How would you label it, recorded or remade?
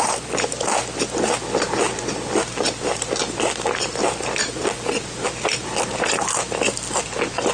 recorded